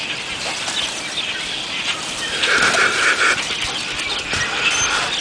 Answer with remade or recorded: recorded